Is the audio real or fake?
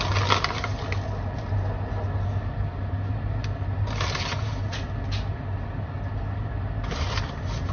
real